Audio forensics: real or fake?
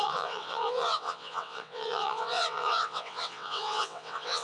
fake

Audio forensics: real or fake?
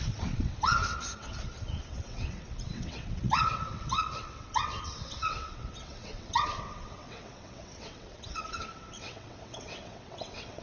fake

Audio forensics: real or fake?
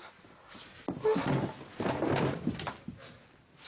real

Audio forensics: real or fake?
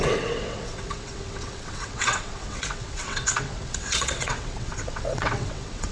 fake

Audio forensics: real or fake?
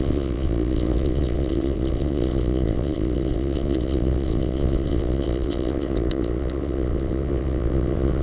fake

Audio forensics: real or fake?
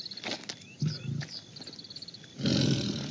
real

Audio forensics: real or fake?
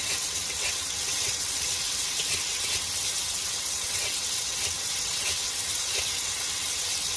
fake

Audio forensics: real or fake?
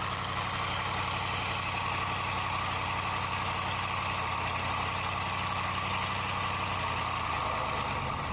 real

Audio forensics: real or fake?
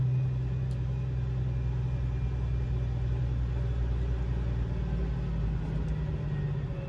real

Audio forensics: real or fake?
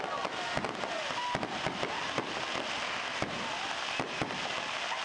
real